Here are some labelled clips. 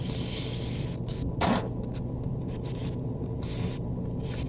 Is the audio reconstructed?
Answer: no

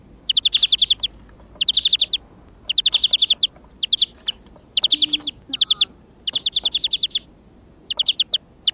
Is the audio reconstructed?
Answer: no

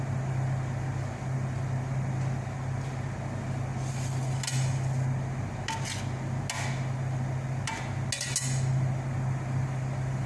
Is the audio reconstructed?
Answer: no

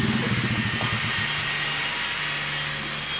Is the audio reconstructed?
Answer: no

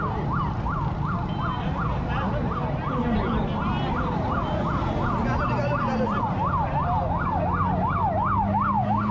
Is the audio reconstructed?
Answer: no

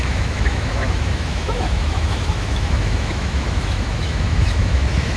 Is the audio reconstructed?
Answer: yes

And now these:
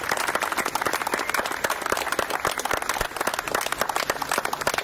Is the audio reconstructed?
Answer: no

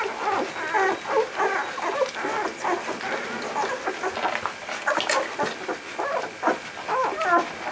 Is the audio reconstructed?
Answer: no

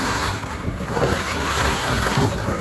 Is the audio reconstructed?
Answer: yes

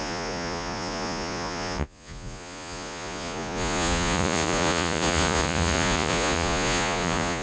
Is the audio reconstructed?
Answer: yes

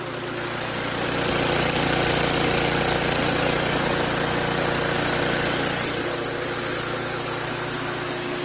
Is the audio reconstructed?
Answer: no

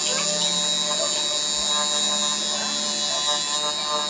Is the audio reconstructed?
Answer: no